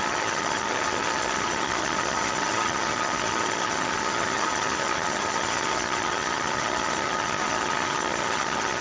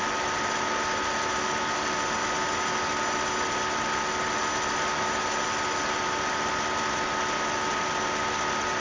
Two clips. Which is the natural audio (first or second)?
second